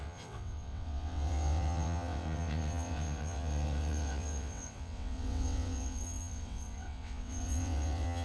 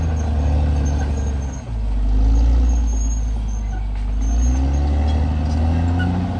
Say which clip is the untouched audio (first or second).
second